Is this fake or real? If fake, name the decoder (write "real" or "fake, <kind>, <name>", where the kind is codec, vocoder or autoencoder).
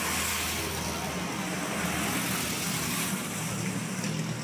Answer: real